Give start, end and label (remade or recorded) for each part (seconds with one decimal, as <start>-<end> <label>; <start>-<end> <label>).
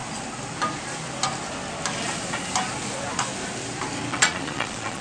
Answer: 0.0-4.1 recorded; 4.1-5.0 remade